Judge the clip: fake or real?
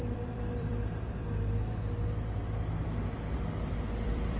fake